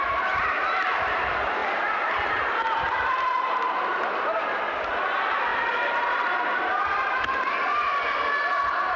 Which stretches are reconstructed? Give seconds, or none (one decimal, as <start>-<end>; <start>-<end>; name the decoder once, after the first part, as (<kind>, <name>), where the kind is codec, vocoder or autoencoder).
0.0-9.0 (vocoder, BigVGAN v2)